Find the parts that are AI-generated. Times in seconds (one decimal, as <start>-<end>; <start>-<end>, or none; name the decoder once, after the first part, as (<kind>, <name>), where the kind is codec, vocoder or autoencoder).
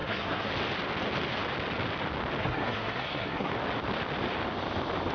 0.0-0.5 (codec, SNAC); 2.4-3.5